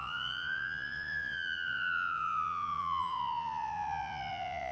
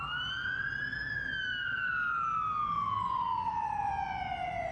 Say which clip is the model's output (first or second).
first